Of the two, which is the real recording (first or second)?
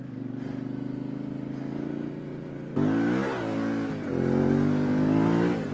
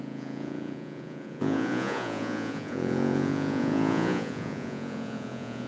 first